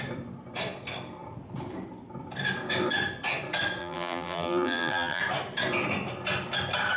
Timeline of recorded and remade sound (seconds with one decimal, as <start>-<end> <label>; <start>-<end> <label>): 0.0-3.8 recorded; 3.8-5.2 remade; 5.2-7.0 recorded